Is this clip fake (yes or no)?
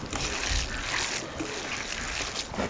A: no